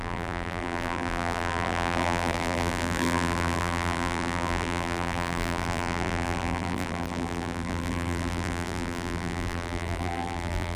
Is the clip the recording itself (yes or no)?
no